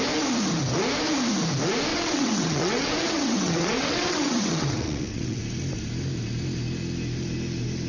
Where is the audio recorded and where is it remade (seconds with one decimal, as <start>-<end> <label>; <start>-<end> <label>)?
0.0-1.9 recorded; 1.9-5.4 remade; 5.4-7.9 recorded